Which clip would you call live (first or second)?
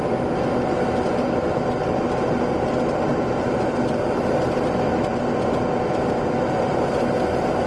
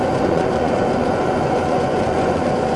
first